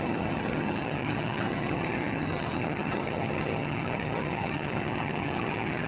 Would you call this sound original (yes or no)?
no